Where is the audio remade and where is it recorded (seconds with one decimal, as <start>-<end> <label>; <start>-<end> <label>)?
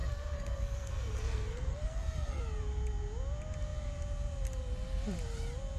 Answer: 0.0-2.4 remade; 2.4-5.8 recorded